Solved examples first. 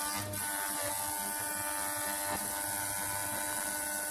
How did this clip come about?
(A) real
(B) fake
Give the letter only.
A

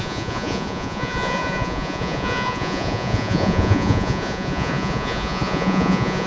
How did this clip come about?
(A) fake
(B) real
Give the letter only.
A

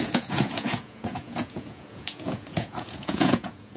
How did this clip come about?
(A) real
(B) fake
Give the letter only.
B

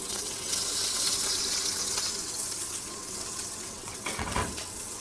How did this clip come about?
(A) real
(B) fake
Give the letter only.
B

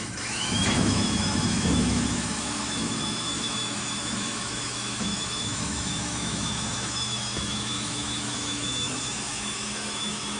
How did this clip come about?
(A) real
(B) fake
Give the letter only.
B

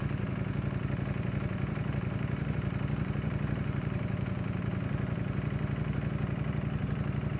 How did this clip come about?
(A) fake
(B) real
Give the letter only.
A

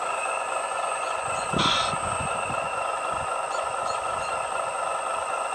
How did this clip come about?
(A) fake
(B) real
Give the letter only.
A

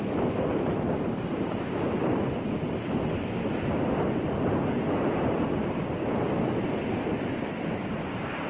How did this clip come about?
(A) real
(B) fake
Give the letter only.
A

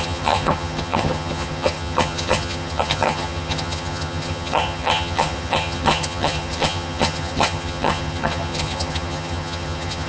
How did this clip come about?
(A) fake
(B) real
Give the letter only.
A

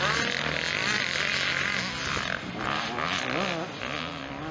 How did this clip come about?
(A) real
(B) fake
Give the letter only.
A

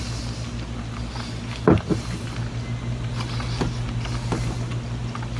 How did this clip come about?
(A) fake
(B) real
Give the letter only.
B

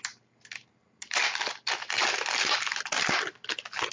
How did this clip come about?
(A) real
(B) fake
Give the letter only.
A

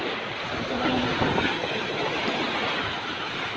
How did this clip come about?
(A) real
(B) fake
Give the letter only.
A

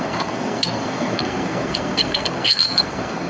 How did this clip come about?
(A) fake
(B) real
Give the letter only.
A